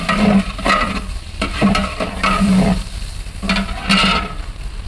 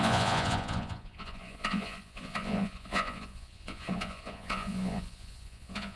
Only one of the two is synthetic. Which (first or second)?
second